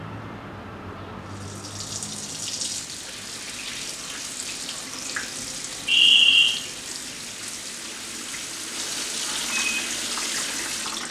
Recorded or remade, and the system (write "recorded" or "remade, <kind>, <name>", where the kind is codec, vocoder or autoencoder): recorded